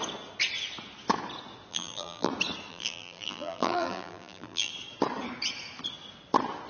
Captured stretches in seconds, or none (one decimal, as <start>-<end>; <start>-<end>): 0.0-1.7; 2.3-2.7; 4.7-6.7

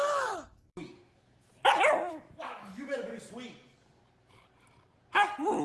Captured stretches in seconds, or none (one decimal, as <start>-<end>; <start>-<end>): 1.5-2.1; 3.1-5.6

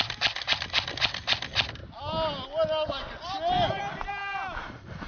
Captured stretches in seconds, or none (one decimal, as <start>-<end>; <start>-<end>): 0.0-5.1

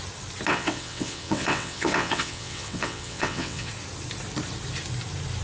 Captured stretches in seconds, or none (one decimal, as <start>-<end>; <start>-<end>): 0.0-0.5; 3.7-5.4

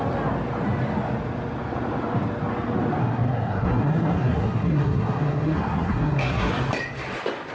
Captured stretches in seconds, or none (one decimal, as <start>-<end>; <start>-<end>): 0.0-3.0; 6.5-7.5

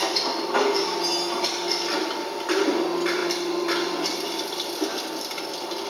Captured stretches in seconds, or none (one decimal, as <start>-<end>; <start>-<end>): 0.8-1.4